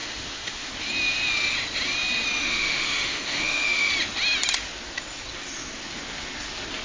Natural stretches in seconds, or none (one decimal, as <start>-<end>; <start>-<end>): 0.7-2.4; 3.9-6.8